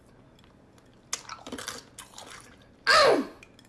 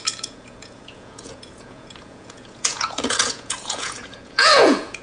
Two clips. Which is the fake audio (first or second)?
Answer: second